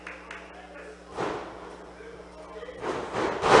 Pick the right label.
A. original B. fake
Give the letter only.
A